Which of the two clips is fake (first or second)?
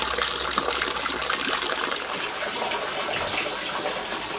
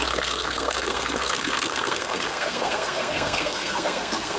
second